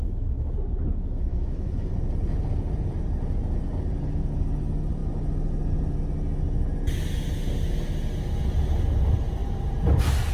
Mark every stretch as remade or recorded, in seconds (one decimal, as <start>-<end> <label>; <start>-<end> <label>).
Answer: 0.0-1.3 recorded; 1.3-1.9 remade; 1.9-10.3 recorded